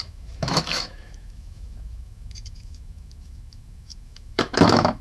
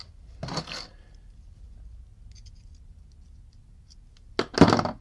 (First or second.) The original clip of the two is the second